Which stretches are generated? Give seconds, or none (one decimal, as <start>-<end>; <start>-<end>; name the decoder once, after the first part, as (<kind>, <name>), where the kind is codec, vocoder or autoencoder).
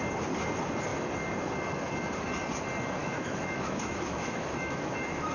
3.0-5.3 (autoencoder, DAC-VAE)